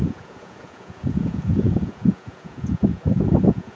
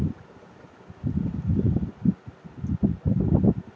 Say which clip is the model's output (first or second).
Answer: first